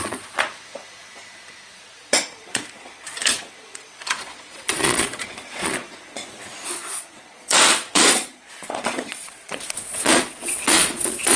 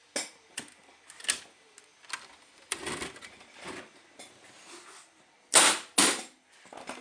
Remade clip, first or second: first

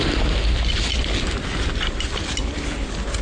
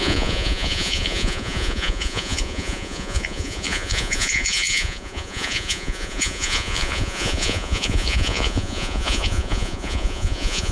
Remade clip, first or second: second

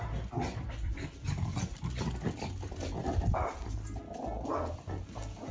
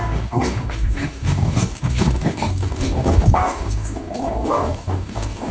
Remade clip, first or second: second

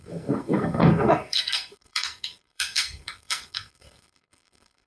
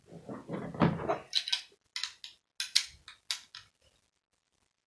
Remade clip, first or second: first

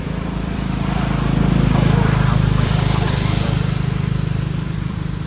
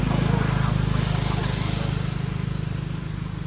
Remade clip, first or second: first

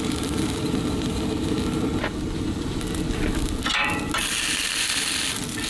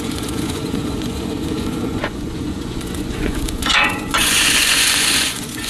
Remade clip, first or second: second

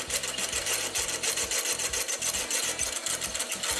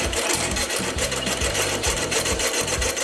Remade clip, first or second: second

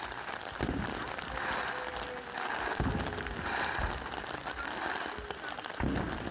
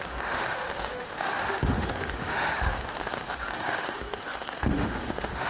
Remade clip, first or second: second